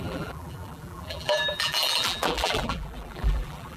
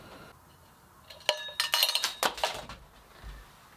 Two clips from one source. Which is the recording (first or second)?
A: second